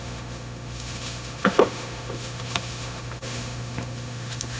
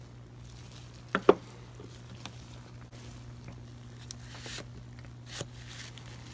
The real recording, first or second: second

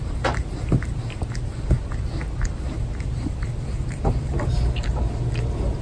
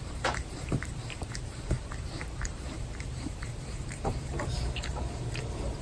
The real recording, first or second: first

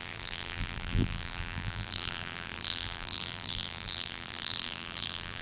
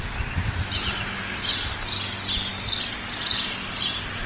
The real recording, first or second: second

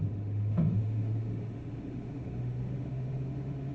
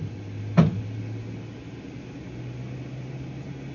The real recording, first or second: second